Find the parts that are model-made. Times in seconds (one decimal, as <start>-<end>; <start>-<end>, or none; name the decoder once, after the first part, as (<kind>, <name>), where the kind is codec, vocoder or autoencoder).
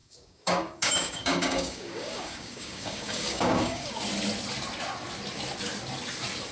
0.0-3.9 (codec, DAC)